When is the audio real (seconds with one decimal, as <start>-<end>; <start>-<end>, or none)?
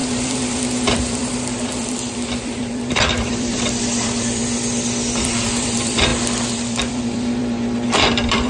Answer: 4.4-5.2